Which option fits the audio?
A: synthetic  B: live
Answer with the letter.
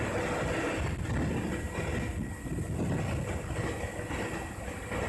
B